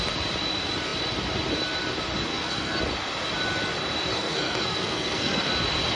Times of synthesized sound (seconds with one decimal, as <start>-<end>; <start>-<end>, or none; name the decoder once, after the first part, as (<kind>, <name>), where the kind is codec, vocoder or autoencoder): 2.3-2.8 (codec, SNAC); 4.1-5.5